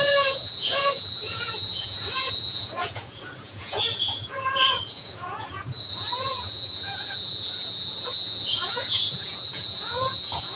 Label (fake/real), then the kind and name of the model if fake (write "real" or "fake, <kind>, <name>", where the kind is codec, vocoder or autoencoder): fake, vocoder, Vocos